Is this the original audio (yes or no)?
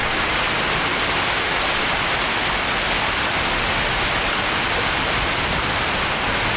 yes